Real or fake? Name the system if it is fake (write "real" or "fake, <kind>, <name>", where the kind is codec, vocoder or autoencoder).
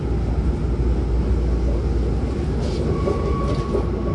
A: real